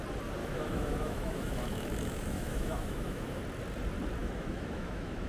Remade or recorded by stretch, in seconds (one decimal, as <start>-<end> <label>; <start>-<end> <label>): 0.0-0.4 recorded; 0.4-3.4 remade; 3.4-4.2 recorded; 4.2-5.3 remade